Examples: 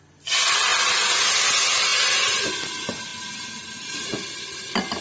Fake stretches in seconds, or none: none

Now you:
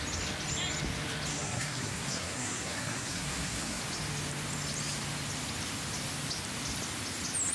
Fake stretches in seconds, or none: 1.3-3.8 (codec, SNAC)

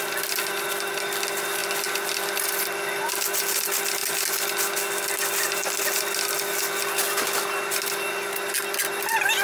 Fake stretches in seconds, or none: none

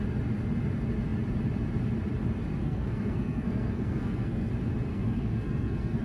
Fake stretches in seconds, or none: 2.6-4.5 (codec, SNAC); 4.9-6.0

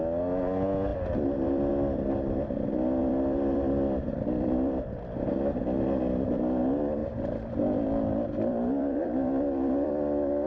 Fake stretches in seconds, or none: 0.9-1.7 (vocoder, BigVGAN v2); 3.0-5.0; 7.0-9.9

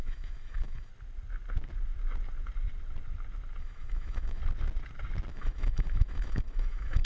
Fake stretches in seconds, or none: 0.0-0.9 (autoencoder, DAC-VAE); 3.6-4.4; 5.3-7.1